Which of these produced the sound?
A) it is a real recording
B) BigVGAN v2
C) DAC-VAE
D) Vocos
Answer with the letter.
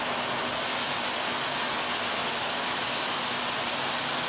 A